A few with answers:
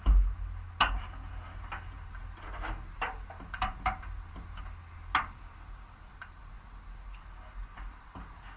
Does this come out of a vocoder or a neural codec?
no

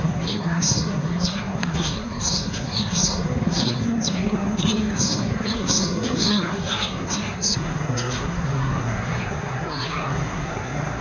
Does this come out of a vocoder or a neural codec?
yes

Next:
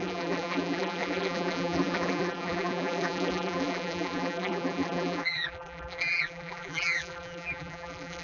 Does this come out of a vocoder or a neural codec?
yes